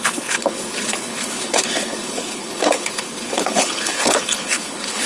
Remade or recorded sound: remade